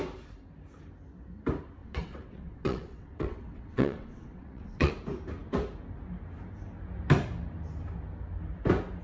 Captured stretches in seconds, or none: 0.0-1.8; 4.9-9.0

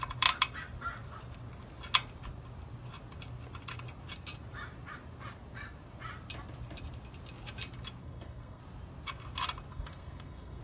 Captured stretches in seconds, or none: 0.0-8.0; 8.6-9.7

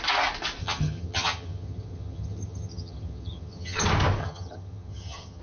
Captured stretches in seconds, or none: 0.0-0.6; 3.8-4.2

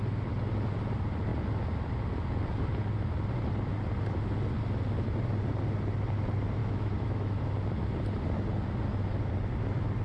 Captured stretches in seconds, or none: 0.0-6.6; 7.4-10.0

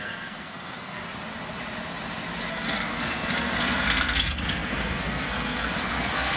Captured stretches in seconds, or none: 1.0-2.5

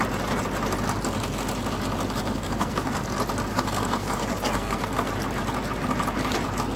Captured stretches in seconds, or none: 0.0-2.2; 3.0-3.5; 5.1-6.8

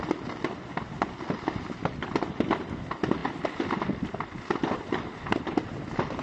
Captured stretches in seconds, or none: 0.0-6.2